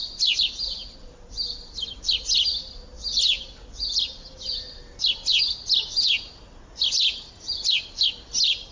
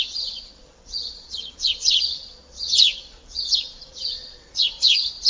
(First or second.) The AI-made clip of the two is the second